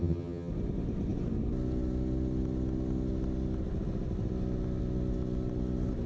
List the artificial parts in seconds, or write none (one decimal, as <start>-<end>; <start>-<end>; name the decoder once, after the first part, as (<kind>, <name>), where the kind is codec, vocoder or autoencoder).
0.0-0.5 (vocoder, HiFi-GAN)